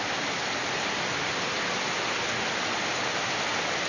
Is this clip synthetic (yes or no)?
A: no